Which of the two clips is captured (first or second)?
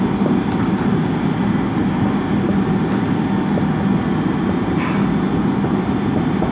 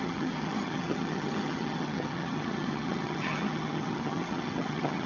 first